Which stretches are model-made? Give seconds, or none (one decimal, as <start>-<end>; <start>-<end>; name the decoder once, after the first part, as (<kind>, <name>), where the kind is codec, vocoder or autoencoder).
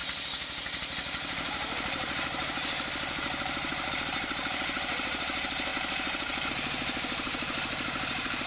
0.0-8.5 (vocoder, BigVGAN v2)